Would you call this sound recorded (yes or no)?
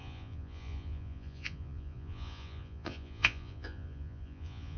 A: no